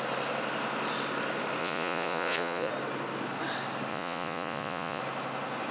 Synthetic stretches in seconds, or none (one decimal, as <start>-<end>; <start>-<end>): 1.6-2.7; 3.9-5.0